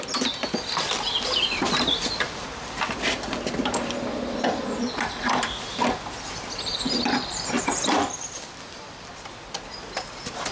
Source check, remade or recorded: remade